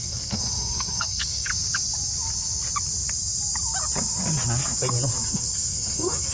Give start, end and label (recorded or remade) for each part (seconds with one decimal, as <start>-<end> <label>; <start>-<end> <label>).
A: 0.0-1.5 remade; 1.5-5.3 recorded; 5.3-6.3 remade